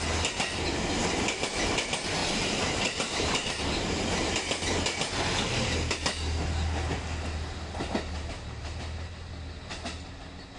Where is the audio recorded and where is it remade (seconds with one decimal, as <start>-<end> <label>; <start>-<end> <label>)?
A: 0.0-2.2 recorded; 2.2-3.5 remade; 3.5-10.6 recorded